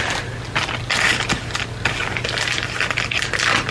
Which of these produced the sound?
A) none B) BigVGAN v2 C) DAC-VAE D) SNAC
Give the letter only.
A